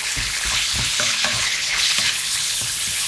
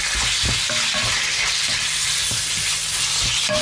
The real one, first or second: second